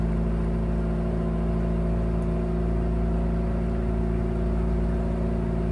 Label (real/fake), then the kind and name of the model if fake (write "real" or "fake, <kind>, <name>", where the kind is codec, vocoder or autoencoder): real